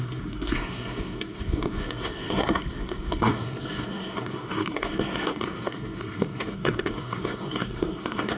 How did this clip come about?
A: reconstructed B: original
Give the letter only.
A